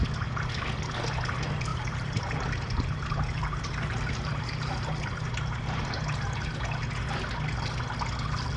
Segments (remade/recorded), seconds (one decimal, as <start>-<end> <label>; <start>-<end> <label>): 0.0-1.7 recorded; 1.7-6.5 remade; 6.5-8.6 recorded